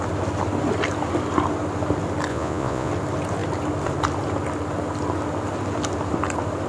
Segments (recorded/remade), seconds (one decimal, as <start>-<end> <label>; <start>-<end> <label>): 0.0-2.3 recorded; 2.3-2.9 remade; 2.9-6.7 recorded